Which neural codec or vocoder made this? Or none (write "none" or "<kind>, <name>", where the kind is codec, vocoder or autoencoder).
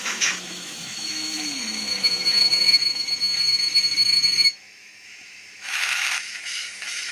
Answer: autoencoder, DAC-VAE